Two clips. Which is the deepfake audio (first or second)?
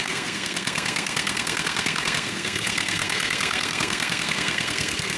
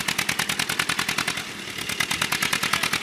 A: first